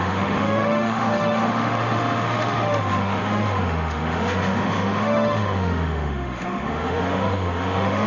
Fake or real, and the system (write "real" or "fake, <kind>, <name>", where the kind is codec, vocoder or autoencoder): fake, autoencoder, DAC-VAE